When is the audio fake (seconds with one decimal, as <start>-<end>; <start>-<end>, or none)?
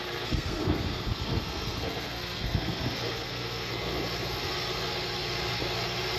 0.0-3.7